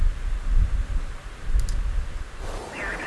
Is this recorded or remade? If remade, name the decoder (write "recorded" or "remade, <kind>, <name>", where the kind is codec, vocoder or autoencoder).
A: remade, vocoder, BigVGAN v2